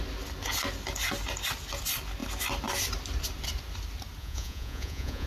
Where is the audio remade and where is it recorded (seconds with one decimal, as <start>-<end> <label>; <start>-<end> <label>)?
0.0-4.2 recorded; 4.2-5.3 remade